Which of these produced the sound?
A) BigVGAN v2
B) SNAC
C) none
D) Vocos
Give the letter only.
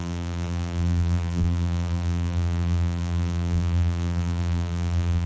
A